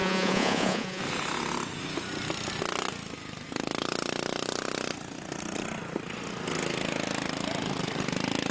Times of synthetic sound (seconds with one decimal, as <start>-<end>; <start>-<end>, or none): 0.0-1.0